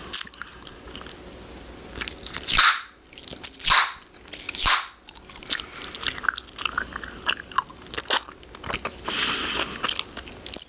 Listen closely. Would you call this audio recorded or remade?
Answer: recorded